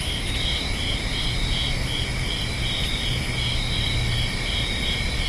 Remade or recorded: recorded